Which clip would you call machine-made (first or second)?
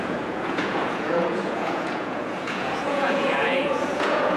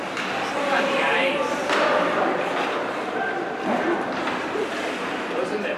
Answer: first